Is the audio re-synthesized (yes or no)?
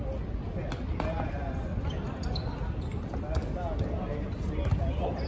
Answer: no